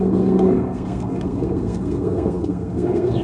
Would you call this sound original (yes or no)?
no